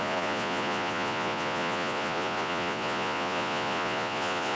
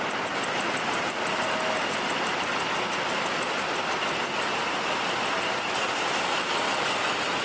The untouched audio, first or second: second